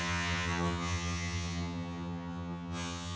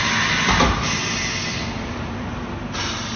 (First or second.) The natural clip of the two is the second